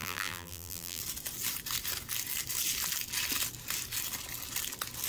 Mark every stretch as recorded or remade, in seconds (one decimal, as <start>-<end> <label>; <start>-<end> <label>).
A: 0.0-1.0 remade; 1.0-5.1 recorded